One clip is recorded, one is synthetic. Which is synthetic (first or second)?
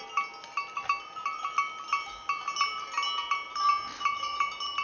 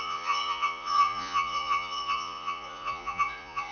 second